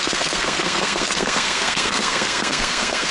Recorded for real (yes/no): no